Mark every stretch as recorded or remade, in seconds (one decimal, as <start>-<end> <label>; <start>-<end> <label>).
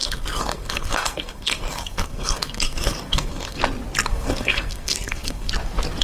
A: 0.0-3.6 remade; 3.6-4.1 recorded; 4.1-5.5 remade; 5.5-6.0 recorded